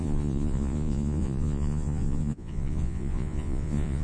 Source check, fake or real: fake